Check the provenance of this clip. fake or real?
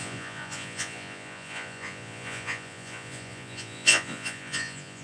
fake